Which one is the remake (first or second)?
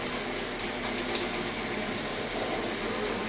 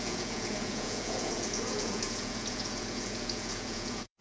second